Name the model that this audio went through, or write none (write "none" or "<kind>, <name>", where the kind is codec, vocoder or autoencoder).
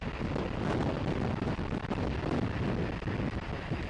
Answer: none